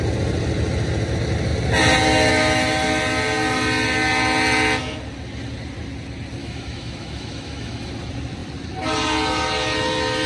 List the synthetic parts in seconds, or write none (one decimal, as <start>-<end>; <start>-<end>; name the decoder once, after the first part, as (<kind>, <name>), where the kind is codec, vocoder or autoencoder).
6.4-7.9 (autoencoder, DAC-VAE)